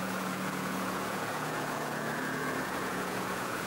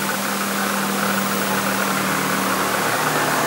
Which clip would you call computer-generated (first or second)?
first